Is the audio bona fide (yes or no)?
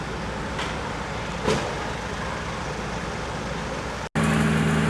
yes